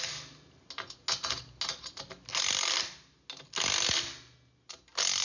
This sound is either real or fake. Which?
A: real